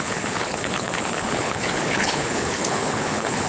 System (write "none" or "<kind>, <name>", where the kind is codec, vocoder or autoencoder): codec, HILCodec